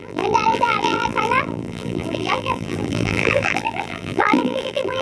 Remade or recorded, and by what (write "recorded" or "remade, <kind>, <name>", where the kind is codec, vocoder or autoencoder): remade, vocoder, BigVGAN v2